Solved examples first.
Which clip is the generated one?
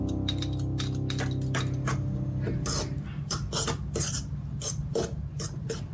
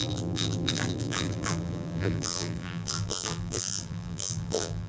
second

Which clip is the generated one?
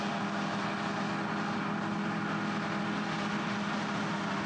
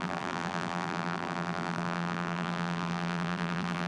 second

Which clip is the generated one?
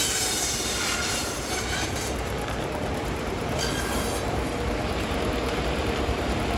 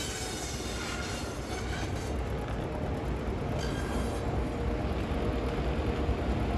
first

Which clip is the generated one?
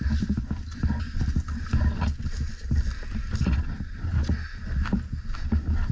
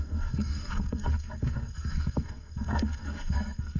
second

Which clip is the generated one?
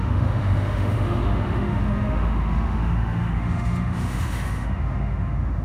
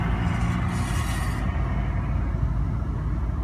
first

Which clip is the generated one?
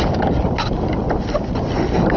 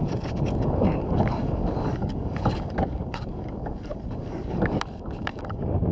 second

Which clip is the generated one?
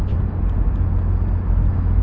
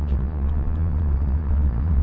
second